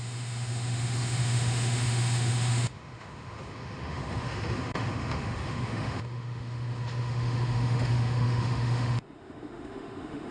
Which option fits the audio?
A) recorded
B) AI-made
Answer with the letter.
B